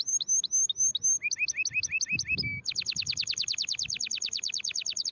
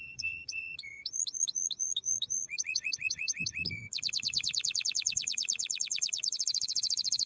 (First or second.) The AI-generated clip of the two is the second